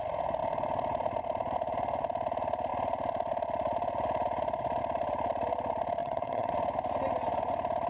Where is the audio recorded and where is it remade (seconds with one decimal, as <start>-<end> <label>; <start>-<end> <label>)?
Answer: 0.0-6.0 recorded; 6.0-6.5 remade; 6.5-7.9 recorded